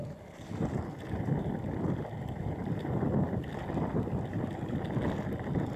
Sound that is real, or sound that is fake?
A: real